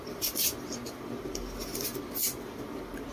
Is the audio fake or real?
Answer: real